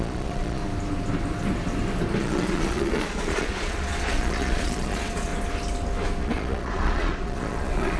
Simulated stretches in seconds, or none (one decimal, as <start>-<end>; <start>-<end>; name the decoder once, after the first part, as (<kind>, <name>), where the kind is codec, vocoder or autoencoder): 0.0-0.6 (vocoder, Vocos); 2.2-5.3; 6.2-8.0